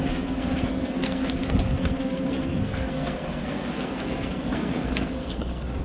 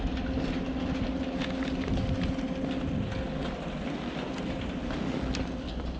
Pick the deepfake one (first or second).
first